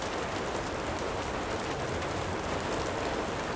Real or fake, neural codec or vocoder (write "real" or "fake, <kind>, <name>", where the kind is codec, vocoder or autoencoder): real